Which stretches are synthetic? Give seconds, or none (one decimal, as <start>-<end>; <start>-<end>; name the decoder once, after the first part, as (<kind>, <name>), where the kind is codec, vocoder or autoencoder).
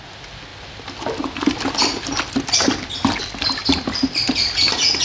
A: 0.5-3.2 (vocoder, BigVGAN v2); 3.6-4.2